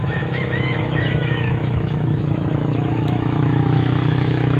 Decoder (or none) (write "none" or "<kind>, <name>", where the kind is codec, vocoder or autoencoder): autoencoder, DAC-VAE